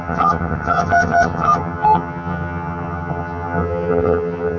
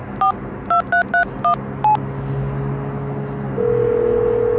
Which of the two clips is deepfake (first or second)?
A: first